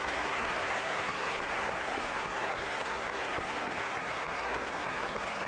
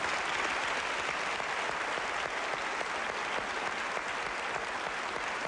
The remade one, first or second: first